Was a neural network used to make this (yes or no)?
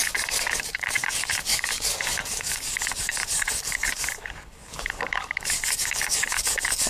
yes